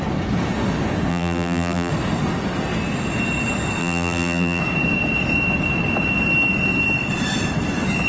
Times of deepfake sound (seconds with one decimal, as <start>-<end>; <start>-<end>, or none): 1.1-1.9; 3.8-4.6